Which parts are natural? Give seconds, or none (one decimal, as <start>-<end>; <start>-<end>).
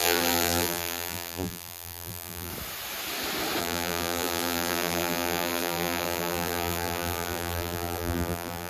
2.5-3.6